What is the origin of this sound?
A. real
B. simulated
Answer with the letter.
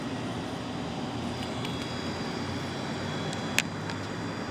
A